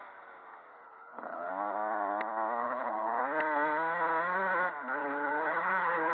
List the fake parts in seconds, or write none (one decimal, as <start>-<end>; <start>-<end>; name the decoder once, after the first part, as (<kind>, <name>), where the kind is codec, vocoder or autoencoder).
0.7-1.5 (codec, HILCodec); 2.6-3.2; 5.0-6.1